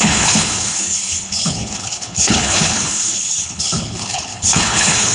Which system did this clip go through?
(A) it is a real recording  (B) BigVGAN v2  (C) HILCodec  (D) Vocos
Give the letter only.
C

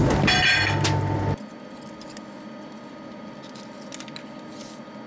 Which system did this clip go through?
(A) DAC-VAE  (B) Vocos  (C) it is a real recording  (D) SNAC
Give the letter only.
C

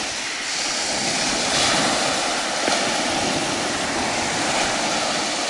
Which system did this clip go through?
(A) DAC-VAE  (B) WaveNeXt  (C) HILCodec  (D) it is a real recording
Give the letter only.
D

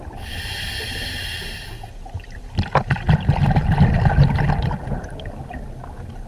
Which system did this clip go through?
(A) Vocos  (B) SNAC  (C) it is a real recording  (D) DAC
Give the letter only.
C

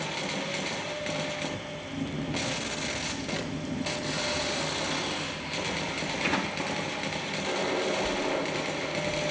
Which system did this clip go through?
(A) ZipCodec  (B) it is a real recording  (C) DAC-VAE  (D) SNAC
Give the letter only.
B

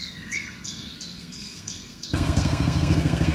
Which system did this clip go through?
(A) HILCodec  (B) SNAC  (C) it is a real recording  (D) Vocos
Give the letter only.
B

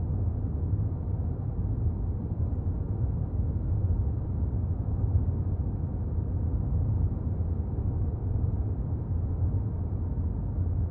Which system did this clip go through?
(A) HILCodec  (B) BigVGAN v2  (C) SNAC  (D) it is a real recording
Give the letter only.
D